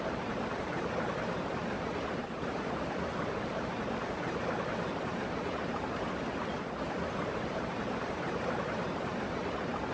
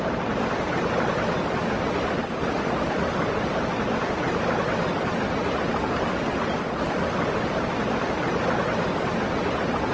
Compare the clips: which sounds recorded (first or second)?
second